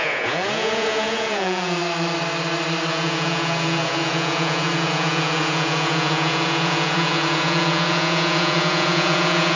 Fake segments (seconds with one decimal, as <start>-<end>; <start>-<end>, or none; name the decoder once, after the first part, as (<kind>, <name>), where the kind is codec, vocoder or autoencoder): 0.0-1.8 (vocoder, Vocos); 2.9-9.6